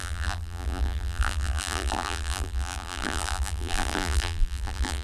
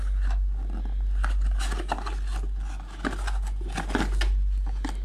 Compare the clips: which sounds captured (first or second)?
second